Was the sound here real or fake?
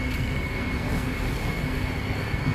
fake